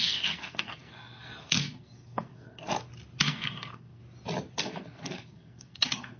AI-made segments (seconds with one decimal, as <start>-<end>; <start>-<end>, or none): 0.0-2.7; 3.2-4.0; 4.6-6.2